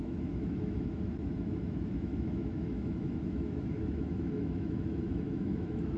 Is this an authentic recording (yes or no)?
no